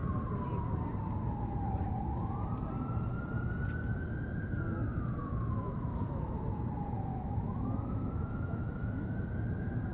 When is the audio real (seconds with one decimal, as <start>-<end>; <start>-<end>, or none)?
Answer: 0.0-5.2; 6.4-7.1; 8.7-9.9